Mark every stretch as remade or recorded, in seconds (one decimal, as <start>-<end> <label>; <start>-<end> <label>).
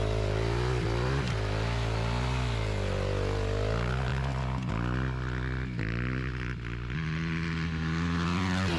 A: 0.0-8.8 recorded